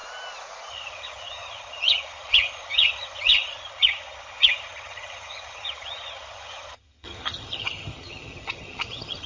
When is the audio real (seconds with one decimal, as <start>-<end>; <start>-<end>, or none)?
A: 0.0-0.7